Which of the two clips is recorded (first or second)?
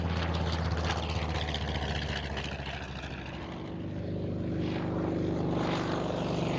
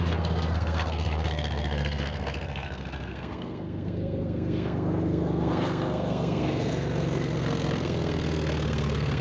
first